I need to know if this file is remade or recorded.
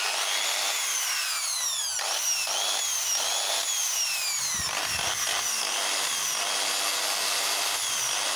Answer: recorded